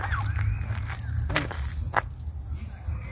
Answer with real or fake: real